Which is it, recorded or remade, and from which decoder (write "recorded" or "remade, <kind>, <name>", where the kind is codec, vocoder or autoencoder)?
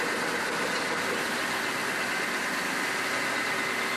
recorded